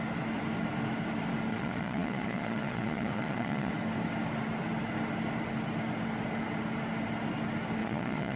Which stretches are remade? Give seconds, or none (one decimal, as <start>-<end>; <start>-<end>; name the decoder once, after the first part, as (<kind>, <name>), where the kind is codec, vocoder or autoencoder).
1.5-3.7 (vocoder, Vocos); 7.8-8.4